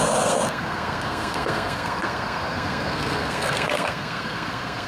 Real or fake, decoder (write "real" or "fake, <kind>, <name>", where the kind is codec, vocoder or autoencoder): fake, codec, SNAC